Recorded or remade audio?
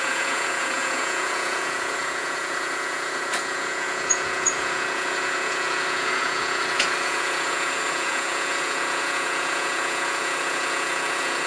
remade